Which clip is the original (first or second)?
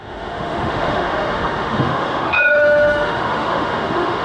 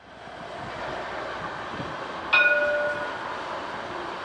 second